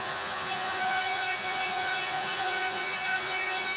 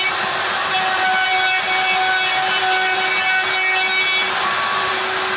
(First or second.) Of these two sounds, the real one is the second